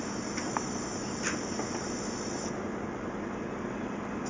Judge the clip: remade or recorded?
recorded